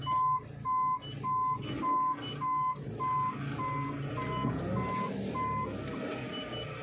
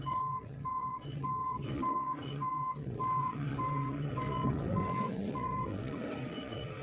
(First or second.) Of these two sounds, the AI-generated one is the second